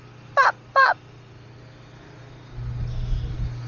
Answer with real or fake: real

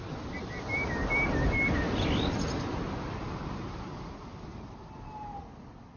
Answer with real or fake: real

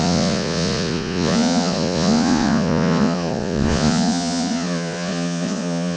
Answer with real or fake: fake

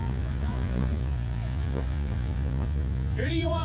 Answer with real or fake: fake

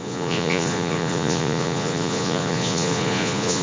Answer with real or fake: fake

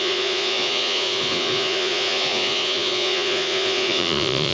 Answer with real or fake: fake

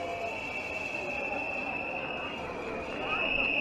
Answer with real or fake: real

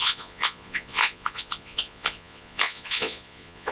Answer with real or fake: fake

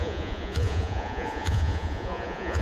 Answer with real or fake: fake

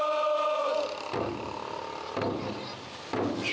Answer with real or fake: real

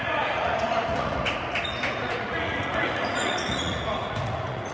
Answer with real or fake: fake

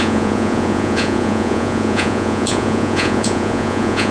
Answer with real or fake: fake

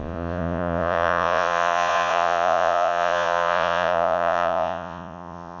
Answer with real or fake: fake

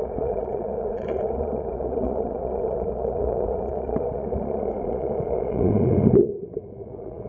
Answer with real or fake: fake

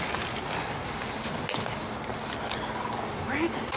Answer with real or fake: real